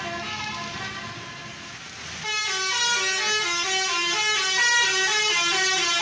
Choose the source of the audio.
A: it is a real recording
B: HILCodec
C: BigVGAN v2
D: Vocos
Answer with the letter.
A